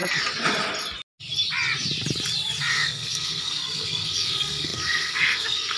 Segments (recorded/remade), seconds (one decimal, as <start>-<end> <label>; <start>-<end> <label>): 0.0-2.6 recorded; 2.6-5.8 remade